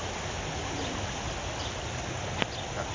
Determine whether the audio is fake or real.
real